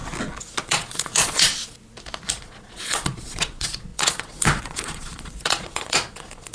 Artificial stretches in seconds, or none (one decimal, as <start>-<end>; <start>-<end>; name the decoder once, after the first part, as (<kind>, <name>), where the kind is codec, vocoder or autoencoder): 0.6-1.5 (vocoder, Vocos); 2.4-6.5